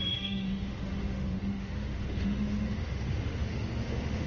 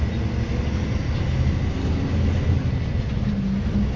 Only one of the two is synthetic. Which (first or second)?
first